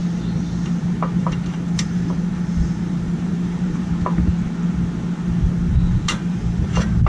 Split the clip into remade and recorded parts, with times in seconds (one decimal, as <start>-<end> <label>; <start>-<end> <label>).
0.0-1.2 recorded; 1.2-3.9 remade; 3.9-5.9 recorded; 5.9-7.1 remade